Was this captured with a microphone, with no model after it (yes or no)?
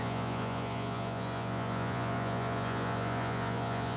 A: no